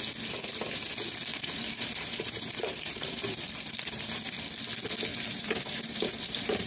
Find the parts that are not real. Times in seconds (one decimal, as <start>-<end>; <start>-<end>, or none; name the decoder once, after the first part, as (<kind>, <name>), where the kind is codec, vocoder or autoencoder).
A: 1.3-4.2 (vocoder, BigVGAN v2); 5.1-6.7